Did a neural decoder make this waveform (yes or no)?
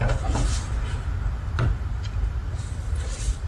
no